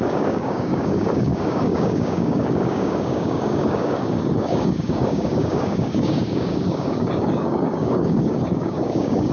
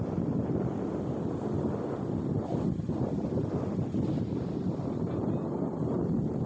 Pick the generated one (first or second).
first